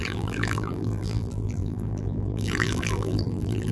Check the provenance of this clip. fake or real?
fake